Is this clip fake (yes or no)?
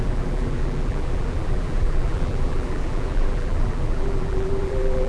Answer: yes